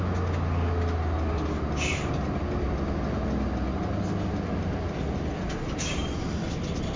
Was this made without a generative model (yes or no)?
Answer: yes